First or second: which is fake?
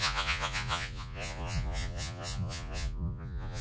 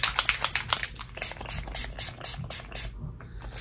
first